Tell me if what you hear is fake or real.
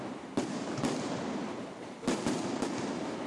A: real